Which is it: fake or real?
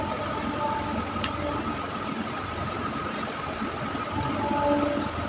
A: real